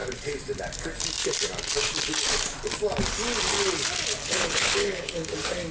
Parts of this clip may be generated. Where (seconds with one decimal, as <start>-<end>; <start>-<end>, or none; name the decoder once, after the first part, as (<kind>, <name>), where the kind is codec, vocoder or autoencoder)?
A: 4.2-5.3 (codec, HILCodec)